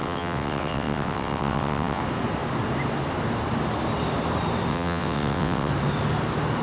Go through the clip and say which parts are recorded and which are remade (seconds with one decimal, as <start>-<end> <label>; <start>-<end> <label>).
0.0-2.0 remade; 2.0-4.7 recorded; 4.7-5.7 remade; 5.7-6.6 recorded